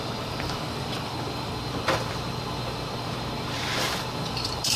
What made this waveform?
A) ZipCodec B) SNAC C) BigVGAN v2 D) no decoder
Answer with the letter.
C